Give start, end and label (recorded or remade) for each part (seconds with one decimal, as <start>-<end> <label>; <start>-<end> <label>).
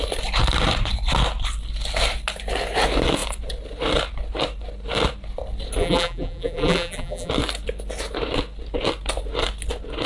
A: 0.0-5.8 recorded; 5.8-7.3 remade; 7.3-10.1 recorded